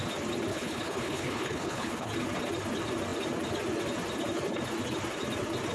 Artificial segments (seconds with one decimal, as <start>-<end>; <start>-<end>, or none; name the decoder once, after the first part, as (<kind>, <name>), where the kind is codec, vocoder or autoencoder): 0.5-2.1 (codec, HILCodec)